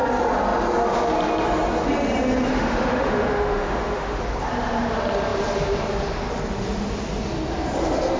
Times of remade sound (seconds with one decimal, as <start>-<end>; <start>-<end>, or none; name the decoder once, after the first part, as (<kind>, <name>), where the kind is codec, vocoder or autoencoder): 2.5-4.2 (autoencoder, DAC-VAE)